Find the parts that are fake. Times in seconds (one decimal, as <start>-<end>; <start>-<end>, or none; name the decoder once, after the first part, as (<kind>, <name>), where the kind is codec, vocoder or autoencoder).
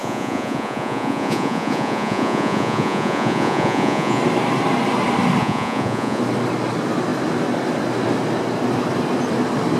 0.0-4.2 (vocoder, Vocos); 5.4-6.2